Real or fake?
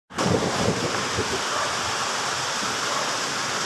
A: real